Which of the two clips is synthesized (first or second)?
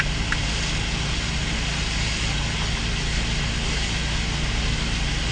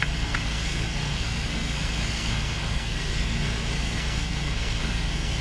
second